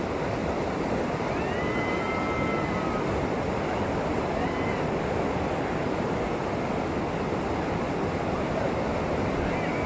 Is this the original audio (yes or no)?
yes